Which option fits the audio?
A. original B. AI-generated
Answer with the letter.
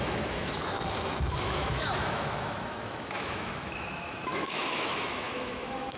B